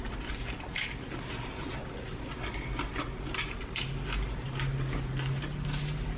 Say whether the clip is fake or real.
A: real